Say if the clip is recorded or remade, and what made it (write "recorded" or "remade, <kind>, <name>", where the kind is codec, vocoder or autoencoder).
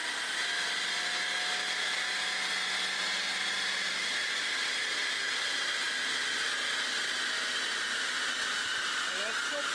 recorded